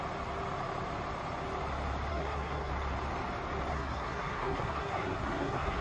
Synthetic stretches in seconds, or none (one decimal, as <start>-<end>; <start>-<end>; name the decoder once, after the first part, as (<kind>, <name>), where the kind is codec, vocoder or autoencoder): 2.1-2.7 (codec, SNAC); 3.7-5.8